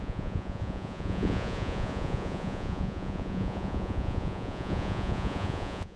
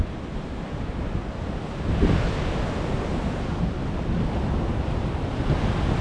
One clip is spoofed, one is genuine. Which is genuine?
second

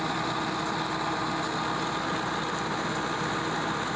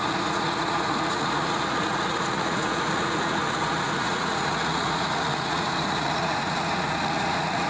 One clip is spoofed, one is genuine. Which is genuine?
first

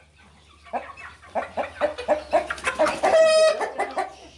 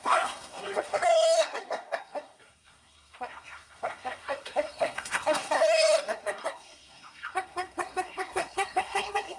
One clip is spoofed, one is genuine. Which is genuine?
first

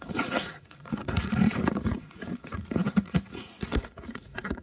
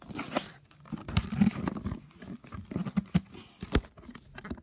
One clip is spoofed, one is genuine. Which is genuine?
second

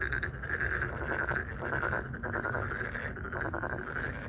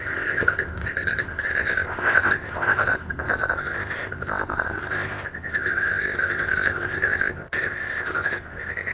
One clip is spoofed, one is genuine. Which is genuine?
first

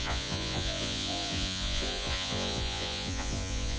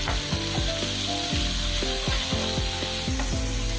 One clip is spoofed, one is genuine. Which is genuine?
second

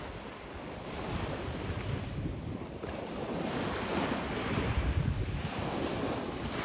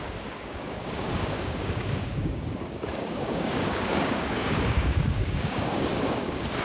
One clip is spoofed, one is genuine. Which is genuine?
first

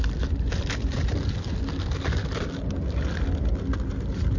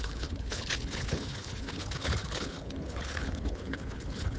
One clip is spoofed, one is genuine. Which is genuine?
first